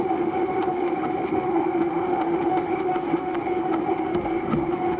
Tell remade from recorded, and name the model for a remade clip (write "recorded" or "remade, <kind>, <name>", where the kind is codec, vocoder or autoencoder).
remade, autoencoder, DAC-VAE